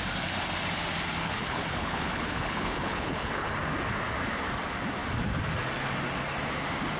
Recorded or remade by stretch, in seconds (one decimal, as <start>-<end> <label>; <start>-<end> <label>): 0.0-1.2 recorded; 1.2-3.5 remade; 3.5-7.0 recorded